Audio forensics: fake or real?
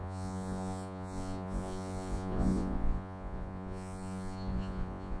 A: fake